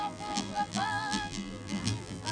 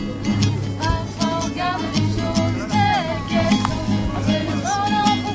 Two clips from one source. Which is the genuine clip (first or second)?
second